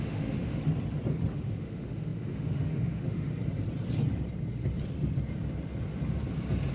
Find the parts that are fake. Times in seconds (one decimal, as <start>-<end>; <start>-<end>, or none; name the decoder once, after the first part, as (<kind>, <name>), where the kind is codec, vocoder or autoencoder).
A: 0.0-0.6 (autoencoder, DAC-VAE); 1.3-3.3